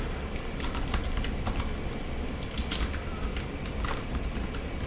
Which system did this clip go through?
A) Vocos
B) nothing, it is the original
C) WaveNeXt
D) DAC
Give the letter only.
B